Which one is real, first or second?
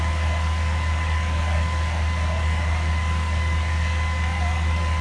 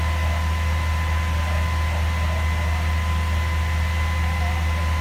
second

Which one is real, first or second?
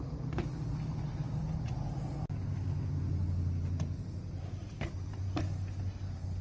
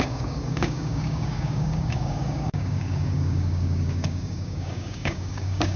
first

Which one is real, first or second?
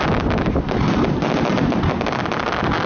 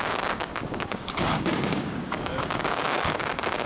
first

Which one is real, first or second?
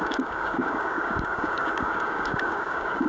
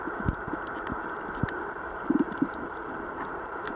second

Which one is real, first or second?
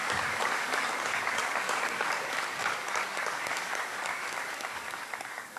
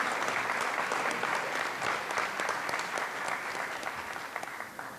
second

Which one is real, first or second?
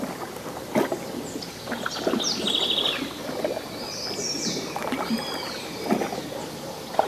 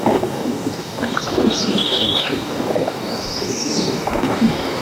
first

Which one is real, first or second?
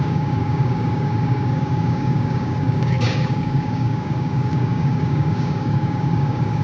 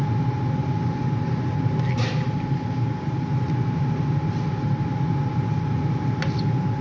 second